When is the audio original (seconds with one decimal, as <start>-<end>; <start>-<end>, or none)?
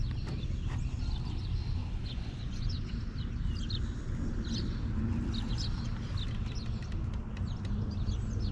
0.0-1.8; 2.7-8.5